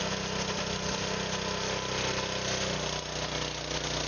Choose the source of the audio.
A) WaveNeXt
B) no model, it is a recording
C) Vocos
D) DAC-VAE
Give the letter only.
B